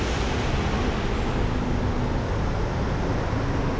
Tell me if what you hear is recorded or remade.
recorded